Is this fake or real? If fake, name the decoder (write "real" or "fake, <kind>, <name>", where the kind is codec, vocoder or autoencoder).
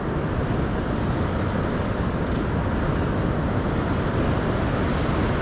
real